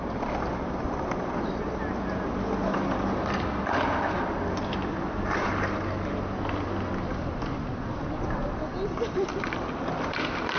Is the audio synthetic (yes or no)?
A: no